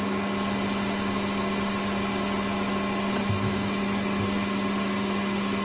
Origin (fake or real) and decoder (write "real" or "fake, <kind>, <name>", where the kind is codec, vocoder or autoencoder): real